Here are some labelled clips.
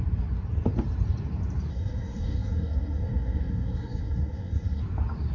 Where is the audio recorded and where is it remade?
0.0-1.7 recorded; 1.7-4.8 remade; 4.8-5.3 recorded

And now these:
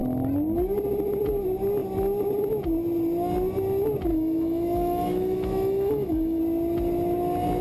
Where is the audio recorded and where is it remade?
0.0-4.1 recorded; 4.1-6.4 remade; 6.4-7.6 recorded

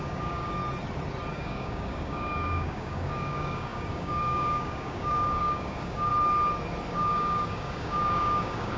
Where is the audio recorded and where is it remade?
0.0-0.6 remade; 0.6-1.3 recorded; 1.3-6.1 remade; 6.1-6.9 recorded; 6.9-8.8 remade

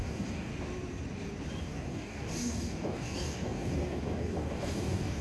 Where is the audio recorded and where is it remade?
0.0-0.5 remade; 0.5-1.6 recorded; 1.6-5.2 remade